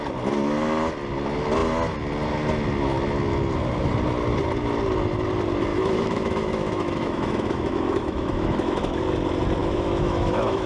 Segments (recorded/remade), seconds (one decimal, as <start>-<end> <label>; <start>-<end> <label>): 0.0-5.7 recorded; 5.7-9.0 remade; 9.0-9.6 recorded; 9.6-10.7 remade